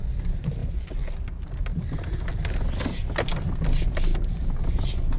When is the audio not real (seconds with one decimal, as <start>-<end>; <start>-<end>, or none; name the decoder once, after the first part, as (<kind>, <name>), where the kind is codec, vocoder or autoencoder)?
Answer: none